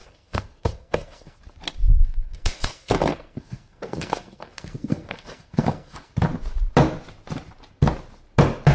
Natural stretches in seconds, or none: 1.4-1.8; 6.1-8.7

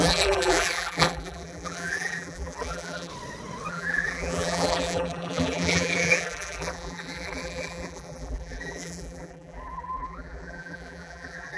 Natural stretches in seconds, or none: 3.1-3.7

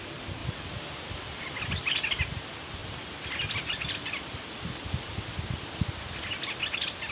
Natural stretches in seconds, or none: 0.0-0.4; 2.2-2.8; 5.7-7.1

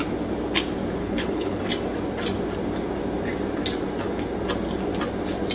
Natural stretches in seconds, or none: 0.0-1.0; 1.6-5.5